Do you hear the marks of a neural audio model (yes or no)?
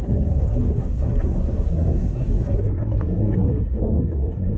yes